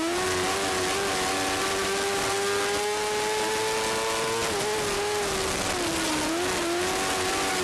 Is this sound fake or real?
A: real